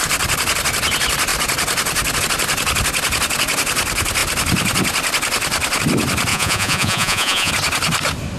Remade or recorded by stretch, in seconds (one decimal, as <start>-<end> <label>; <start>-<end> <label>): 0.0-6.3 recorded; 6.3-7.5 remade; 7.5-8.4 recorded